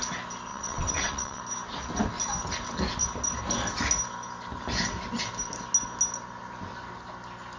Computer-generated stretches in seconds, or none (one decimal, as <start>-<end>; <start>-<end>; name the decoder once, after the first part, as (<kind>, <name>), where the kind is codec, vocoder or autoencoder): 0.5-1.4 (vocoder, WaveNeXt)